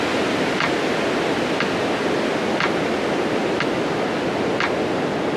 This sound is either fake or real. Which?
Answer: real